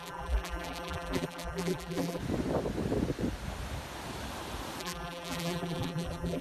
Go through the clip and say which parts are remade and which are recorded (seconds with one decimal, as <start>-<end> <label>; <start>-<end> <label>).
0.0-2.2 remade; 2.2-4.8 recorded; 4.8-6.4 remade